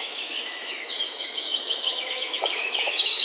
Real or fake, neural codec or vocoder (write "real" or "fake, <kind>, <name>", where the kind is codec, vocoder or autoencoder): fake, autoencoder, DAC-VAE